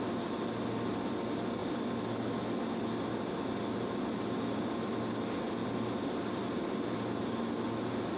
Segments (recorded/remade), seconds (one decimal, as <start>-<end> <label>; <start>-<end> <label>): 0.0-8.2 recorded